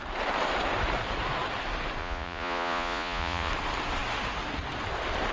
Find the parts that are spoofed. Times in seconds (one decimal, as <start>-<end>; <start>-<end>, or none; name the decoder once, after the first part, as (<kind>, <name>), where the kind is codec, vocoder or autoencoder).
2.0-3.5 (vocoder, Vocos)